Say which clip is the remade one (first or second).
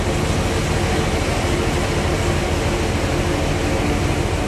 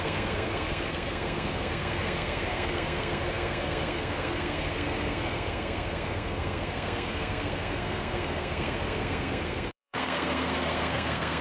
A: second